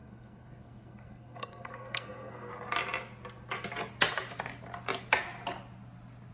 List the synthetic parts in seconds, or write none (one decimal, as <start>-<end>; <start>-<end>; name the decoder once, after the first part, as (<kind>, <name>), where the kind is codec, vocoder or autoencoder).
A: 0.0-2.5 (codec, SNAC)